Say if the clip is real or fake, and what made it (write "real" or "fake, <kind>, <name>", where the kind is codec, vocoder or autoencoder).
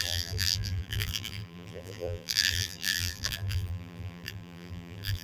fake, vocoder, BigVGAN v2